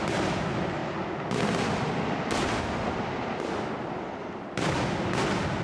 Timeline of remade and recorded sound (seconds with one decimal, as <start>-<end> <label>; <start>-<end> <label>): 0.0-5.6 recorded